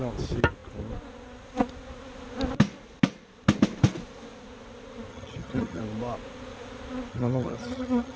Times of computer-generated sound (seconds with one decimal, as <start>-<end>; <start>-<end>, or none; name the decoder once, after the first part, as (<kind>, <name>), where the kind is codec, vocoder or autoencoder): 5.1-5.8 (vocoder, HiFi-GAN); 7.1-8.2

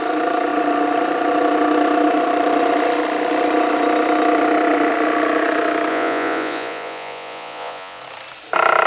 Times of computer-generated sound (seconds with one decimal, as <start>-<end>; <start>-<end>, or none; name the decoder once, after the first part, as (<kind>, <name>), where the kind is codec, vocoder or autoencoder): 5.9-8.0 (vocoder, Vocos)

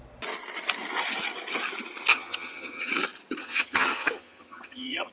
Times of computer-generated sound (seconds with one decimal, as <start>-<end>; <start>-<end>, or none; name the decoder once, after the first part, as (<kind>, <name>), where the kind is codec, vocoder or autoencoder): 2.1-2.9 (vocoder, HiFi-GAN); 3.4-5.1